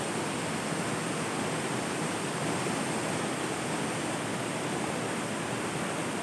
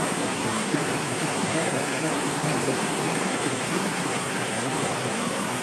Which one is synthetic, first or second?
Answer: second